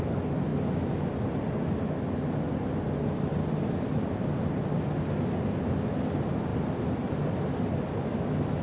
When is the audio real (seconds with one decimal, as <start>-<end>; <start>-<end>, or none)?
0.0-8.6